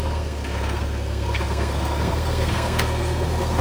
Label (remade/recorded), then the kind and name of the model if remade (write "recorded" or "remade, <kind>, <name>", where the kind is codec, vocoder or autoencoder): remade, codec, SNAC